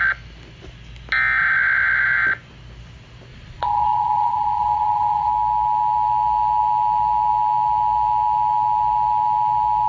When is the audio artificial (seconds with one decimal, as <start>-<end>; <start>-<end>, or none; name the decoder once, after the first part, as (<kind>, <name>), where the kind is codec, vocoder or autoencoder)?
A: 3.3-5.3 (vocoder, Vocos)